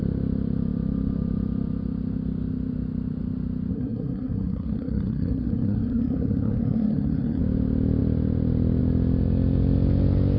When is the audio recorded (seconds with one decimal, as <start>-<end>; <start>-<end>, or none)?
0.0-3.7; 7.4-10.4